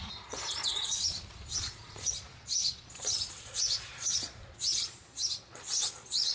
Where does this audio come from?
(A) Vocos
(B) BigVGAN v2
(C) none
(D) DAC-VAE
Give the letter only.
A